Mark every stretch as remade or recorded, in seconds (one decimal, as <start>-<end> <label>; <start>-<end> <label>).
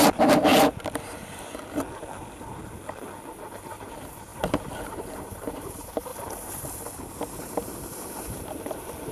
0.0-0.5 remade; 0.5-3.7 recorded; 3.7-6.1 remade; 6.1-7.4 recorded; 7.4-9.1 remade